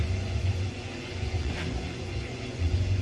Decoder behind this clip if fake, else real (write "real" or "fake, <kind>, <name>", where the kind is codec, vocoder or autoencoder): fake, vocoder, Vocos